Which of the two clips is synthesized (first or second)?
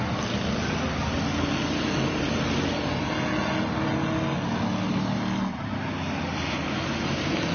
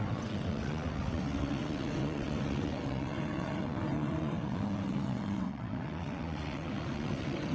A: second